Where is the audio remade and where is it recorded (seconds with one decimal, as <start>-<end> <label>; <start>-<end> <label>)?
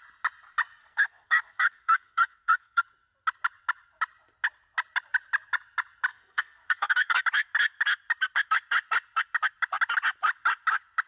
0.0-0.8 recorded; 0.8-2.8 remade; 2.8-6.1 recorded; 6.1-7.2 remade; 7.2-11.1 recorded